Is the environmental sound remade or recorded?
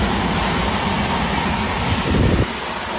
recorded